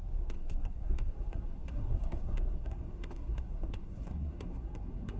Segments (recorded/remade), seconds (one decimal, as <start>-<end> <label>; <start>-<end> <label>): 0.0-5.2 remade